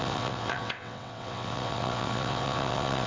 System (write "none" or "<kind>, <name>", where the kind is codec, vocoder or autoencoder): vocoder, WaveNeXt